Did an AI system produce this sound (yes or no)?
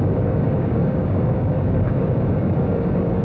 yes